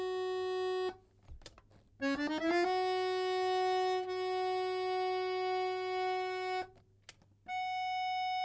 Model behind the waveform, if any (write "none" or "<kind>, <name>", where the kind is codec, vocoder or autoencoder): none